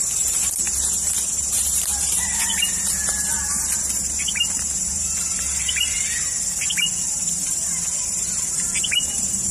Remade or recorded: remade